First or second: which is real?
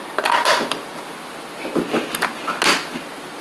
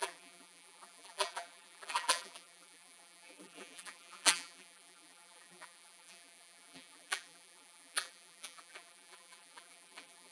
first